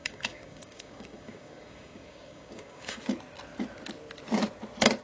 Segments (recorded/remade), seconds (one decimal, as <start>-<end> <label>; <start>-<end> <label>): 0.0-3.0 remade; 3.0-5.0 recorded